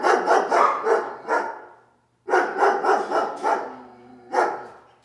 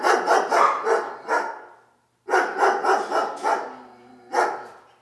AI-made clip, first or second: first